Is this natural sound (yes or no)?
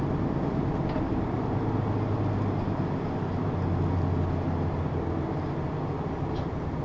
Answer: yes